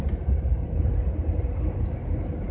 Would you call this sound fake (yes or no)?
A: no